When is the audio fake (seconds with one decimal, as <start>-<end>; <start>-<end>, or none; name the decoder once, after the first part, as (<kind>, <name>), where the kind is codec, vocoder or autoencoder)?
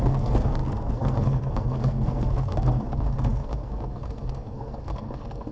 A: 0.0-5.5 (codec, SNAC)